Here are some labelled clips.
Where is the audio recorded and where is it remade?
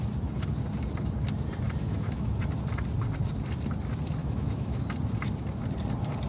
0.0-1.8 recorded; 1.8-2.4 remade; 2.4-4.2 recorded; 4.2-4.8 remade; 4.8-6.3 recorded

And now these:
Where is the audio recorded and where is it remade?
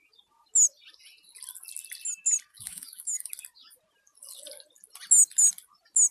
0.0-2.5 recorded; 2.5-3.3 remade; 3.3-6.1 recorded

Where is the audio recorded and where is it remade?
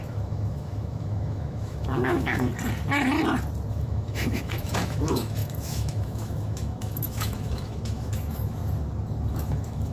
0.0-2.5 remade; 2.5-3.7 recorded; 3.7-8.6 remade; 8.6-9.3 recorded; 9.3-9.9 remade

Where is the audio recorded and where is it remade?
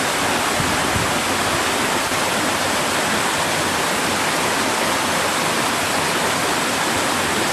0.0-7.5 recorded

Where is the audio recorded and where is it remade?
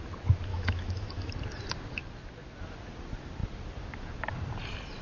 0.0-0.5 recorded; 0.5-1.3 remade; 1.3-5.0 recorded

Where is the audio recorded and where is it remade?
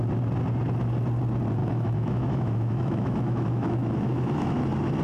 0.0-1.6 recorded; 1.6-4.6 remade; 4.6-5.0 recorded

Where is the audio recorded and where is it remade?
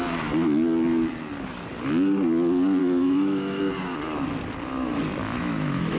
0.0-2.8 recorded; 2.8-3.6 remade; 3.6-5.2 recorded; 5.2-6.0 remade